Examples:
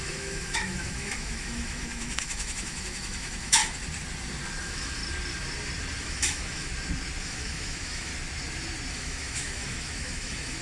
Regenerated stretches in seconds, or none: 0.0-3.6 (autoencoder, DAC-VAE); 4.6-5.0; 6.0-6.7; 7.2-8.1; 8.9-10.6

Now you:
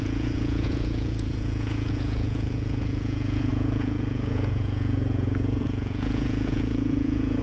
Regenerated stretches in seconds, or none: 0.0-7.4 (vocoder, Vocos)

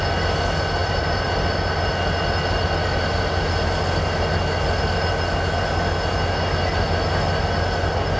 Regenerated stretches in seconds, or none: none

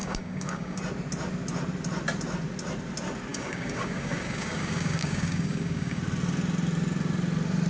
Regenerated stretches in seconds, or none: 0.0-0.8 (codec, DAC); 3.3-6.0

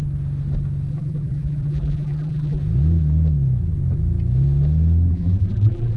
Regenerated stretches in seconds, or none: 0.9-2.6 (vocoder, BigVGAN v2); 5.1-6.0